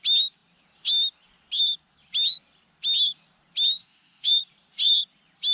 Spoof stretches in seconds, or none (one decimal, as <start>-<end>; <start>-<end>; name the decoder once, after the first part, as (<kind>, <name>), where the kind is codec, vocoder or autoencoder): 3.8-4.4 (autoencoder, DAC-VAE)

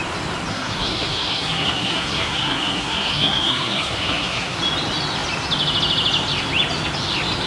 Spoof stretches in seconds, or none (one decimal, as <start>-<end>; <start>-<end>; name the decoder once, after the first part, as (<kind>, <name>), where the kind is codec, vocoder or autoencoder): 0.5-4.6 (codec, SNAC)

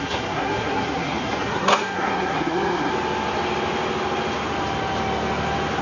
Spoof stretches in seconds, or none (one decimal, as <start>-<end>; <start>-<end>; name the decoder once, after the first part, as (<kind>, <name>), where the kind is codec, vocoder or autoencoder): 0.0-2.9 (codec, SNAC)

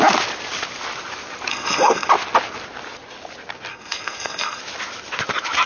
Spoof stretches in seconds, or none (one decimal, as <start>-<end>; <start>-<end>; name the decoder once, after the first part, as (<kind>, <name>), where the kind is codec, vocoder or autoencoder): 1.5-2.1 (codec, SNAC); 3.7-4.6

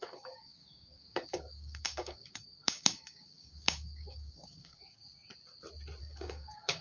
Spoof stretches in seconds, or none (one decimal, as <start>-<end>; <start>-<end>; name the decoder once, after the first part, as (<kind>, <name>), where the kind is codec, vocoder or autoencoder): 0.0-5.0 (codec, DAC); 6.0-6.8

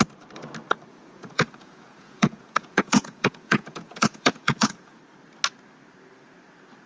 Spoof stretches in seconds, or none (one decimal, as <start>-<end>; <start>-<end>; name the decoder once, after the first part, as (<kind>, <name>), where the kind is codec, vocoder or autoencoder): 0.9-5.0 (vocoder, Vocos)

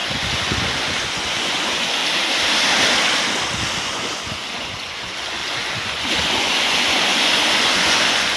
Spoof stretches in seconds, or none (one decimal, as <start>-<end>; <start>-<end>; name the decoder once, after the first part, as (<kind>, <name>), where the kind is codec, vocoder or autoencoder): 0.0-2.0 (vocoder, Vocos); 3.8-8.4